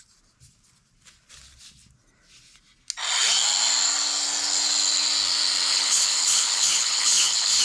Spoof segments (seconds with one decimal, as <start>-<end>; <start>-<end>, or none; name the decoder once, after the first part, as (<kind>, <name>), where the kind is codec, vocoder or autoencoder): 5.7-7.6 (codec, HILCodec)